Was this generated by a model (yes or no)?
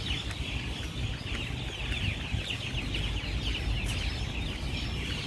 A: no